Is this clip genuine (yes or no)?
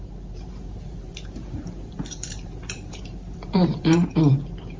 no